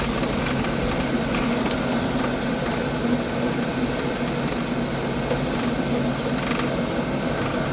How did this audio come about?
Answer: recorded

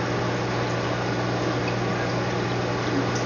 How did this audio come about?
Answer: recorded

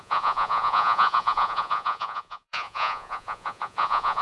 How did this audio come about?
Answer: remade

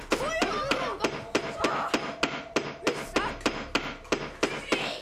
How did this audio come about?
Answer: recorded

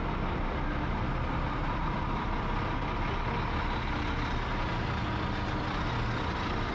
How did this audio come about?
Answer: recorded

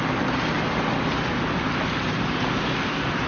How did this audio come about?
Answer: recorded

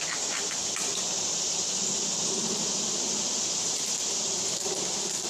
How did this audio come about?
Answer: recorded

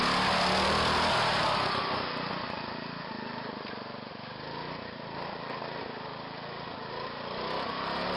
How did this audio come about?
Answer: recorded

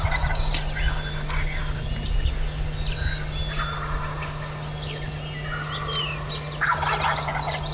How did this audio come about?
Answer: recorded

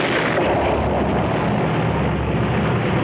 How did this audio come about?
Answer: recorded